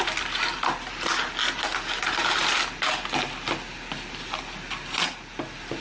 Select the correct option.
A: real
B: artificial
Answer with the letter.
A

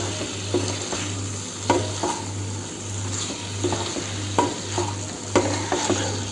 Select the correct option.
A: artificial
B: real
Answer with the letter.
B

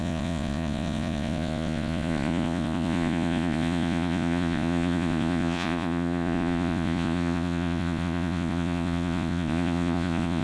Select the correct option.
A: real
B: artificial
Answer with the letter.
B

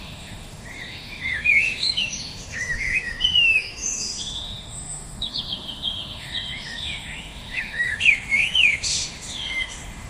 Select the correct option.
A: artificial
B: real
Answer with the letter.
A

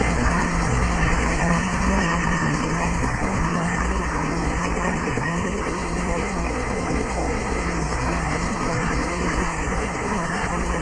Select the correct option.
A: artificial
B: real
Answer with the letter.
A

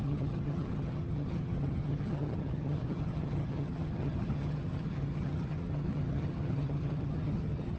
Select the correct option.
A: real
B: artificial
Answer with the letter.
B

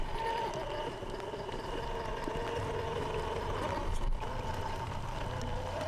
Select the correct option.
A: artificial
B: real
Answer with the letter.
B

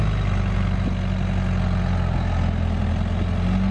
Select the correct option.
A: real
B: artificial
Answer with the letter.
A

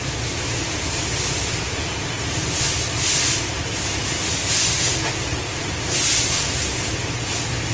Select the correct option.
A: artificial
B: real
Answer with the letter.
B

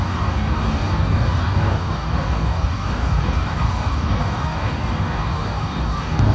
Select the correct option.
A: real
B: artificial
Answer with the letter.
B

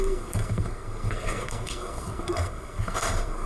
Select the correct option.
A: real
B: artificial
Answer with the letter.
B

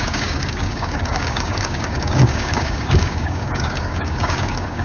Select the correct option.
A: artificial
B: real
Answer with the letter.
A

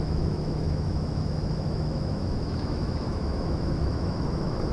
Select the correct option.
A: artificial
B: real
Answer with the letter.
A